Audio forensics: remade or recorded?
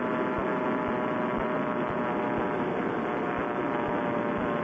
recorded